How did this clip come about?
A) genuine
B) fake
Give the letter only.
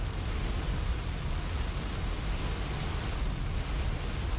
A